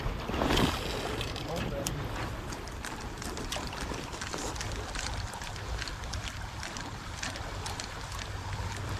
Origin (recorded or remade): recorded